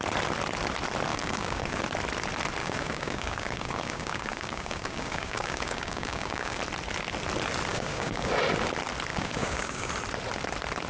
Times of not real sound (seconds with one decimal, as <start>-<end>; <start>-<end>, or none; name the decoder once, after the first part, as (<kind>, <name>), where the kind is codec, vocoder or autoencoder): 1.1-1.8 (codec, DAC); 2.6-6.6; 7.7-8.3; 9.1-9.9